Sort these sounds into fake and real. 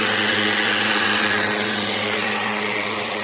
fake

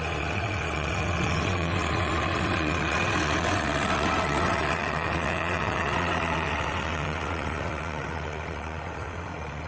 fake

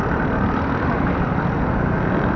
real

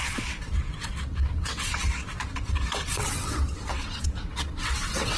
fake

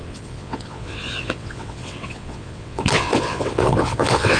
fake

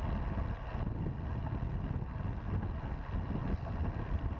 real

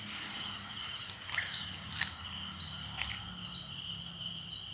real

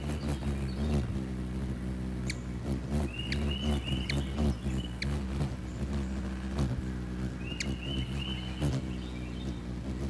real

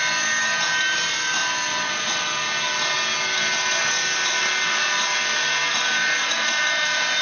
real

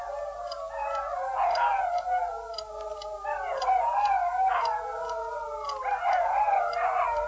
real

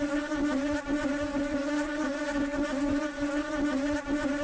real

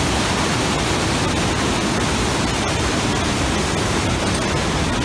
real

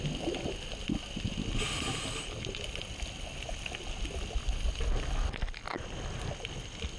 real